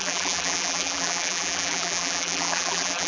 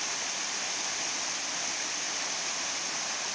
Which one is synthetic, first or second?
first